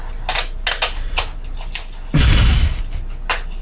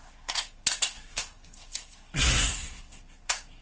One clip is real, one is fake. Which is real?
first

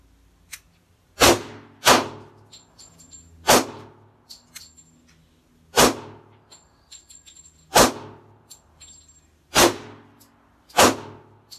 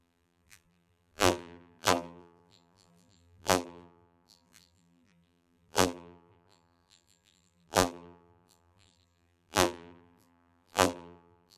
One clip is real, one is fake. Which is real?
first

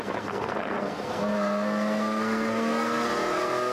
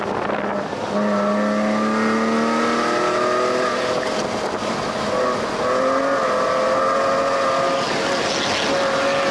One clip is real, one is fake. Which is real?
second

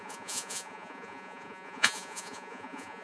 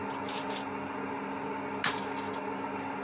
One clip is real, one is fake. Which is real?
second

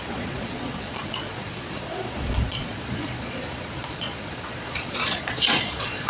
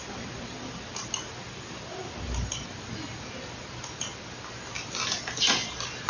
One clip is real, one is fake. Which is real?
second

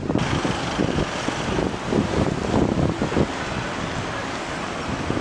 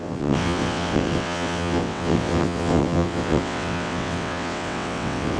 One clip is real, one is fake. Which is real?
first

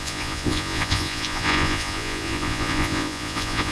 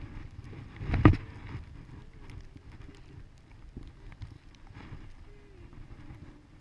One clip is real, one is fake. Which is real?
second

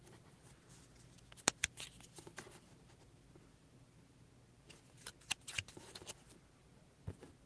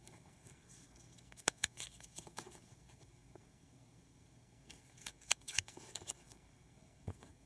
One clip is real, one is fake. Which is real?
first